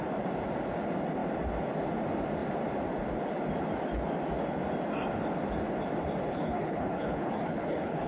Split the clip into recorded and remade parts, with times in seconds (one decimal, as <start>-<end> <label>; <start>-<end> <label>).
0.0-6.2 recorded; 6.2-8.1 remade